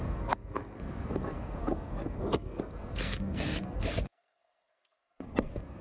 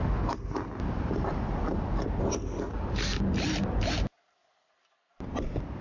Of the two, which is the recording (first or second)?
second